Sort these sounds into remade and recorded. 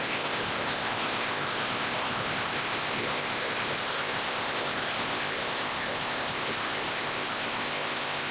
remade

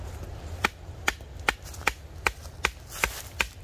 recorded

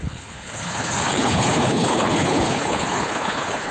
remade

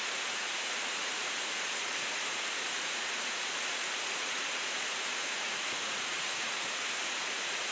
remade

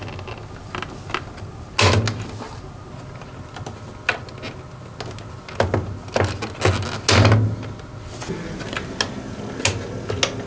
recorded